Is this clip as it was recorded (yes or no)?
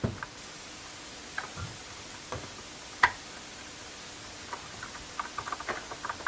no